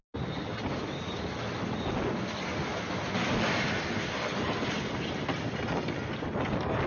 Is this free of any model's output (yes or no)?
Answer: yes